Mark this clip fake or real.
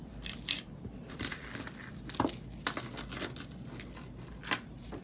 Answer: real